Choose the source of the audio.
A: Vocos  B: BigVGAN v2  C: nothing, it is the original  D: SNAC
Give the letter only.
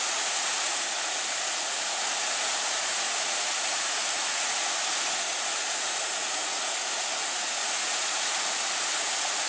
A